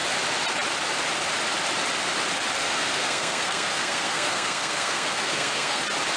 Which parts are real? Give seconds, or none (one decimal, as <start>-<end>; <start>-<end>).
0.0-2.6; 5.8-6.2